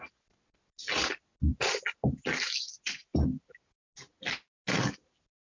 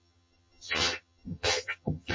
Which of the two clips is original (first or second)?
first